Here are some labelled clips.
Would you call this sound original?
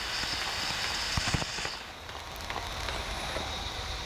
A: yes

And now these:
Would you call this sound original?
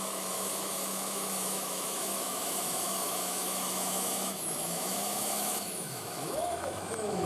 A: no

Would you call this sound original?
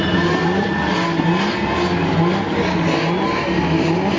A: yes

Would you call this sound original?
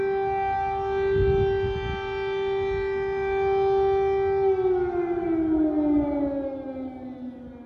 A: yes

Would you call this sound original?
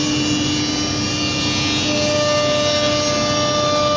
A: yes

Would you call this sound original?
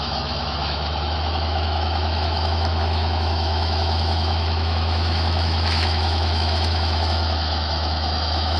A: no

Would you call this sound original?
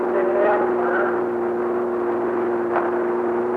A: yes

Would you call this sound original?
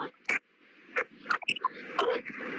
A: yes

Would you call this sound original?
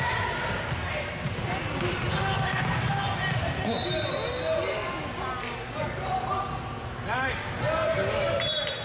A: yes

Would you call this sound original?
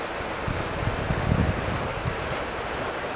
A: yes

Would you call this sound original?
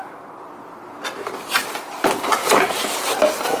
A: yes